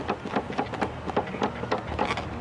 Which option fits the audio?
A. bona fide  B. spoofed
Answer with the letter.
A